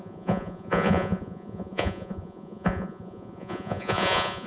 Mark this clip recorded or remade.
remade